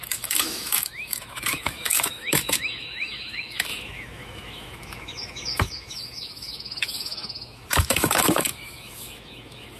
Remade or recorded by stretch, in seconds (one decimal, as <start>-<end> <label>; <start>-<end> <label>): 0.0-9.8 remade